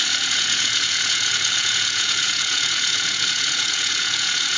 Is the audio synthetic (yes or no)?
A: yes